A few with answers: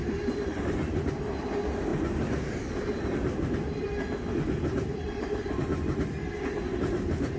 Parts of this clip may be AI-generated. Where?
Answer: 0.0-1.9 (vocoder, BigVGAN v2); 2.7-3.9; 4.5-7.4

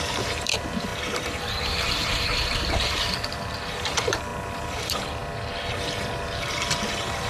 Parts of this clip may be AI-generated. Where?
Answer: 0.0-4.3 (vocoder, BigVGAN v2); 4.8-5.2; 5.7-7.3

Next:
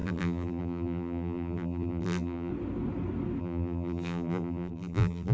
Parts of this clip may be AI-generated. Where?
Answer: 0.0-2.5 (vocoder, BigVGAN v2); 3.4-5.3